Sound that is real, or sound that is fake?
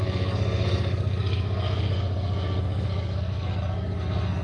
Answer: fake